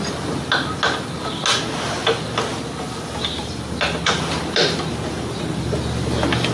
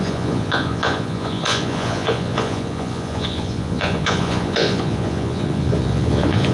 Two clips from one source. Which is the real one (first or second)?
first